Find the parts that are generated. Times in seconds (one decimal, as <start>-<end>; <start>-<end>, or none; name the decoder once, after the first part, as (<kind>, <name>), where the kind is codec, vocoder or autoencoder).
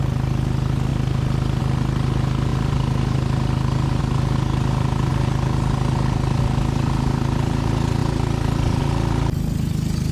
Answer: 2.5-4.0 (vocoder, BigVGAN v2)